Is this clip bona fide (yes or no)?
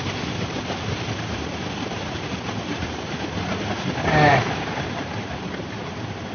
yes